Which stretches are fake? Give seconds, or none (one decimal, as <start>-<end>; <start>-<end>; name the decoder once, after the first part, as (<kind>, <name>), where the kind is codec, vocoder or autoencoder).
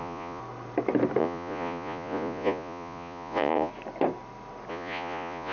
0.0-0.4 (vocoder, Vocos); 1.2-3.7; 4.7-5.5